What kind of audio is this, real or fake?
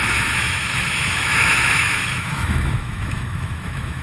fake